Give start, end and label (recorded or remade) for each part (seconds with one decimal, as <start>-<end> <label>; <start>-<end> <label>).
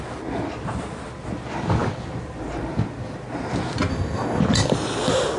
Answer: 0.0-3.9 recorded; 3.9-4.4 remade; 4.4-5.4 recorded